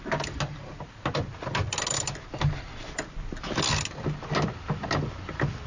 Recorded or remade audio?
recorded